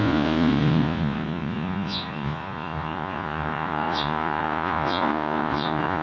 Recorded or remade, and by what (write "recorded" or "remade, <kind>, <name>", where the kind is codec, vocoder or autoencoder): remade, vocoder, Vocos